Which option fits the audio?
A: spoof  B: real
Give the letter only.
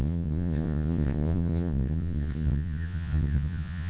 A